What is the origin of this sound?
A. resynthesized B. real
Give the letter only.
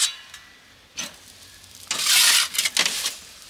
B